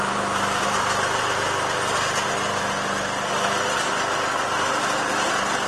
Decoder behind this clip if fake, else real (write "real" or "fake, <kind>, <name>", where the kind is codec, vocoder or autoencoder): real